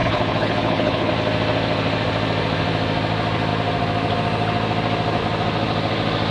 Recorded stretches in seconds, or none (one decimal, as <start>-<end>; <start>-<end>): 1.1-6.3

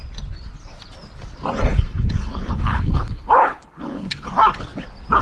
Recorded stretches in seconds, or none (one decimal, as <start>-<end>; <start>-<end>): 0.0-1.7; 4.3-5.2

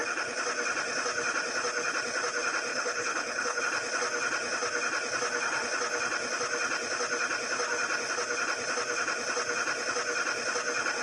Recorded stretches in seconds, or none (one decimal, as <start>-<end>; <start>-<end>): 0.0-2.7; 3.6-11.0